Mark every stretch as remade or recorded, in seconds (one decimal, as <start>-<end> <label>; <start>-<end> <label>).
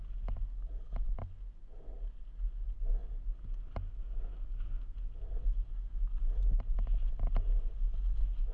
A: 0.0-8.5 recorded